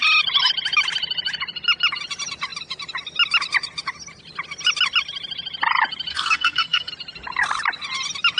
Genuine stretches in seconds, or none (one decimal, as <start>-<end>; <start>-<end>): 0.0-6.1; 6.9-8.4